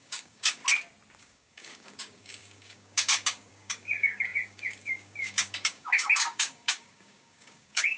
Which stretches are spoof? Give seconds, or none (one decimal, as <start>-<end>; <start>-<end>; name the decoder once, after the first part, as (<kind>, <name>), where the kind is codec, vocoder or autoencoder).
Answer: 0.0-0.6 (codec, DAC); 1.2-8.0